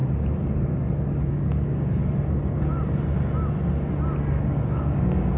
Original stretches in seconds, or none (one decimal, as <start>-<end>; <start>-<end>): 0.0-1.3; 2.0-4.3